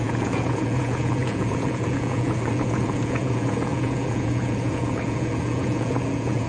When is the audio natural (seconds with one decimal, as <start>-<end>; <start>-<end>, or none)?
none